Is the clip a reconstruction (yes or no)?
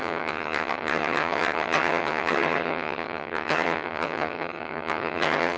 yes